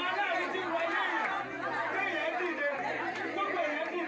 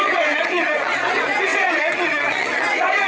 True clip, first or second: first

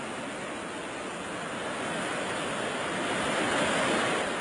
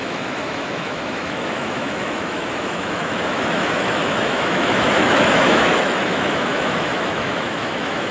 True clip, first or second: first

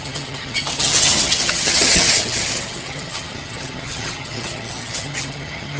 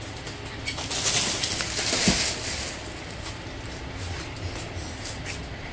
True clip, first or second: second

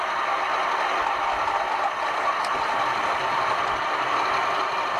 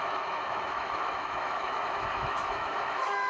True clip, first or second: first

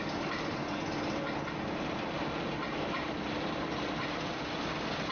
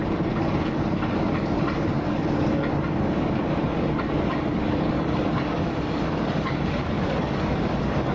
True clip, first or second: first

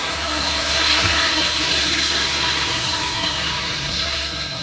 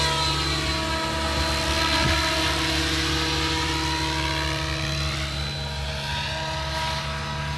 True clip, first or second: second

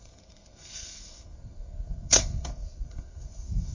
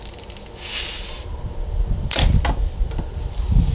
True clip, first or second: second